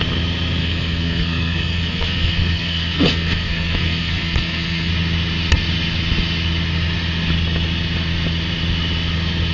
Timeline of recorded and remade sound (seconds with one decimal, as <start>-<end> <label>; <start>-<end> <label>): 0.0-0.6 recorded; 0.6-4.9 remade; 4.9-9.5 recorded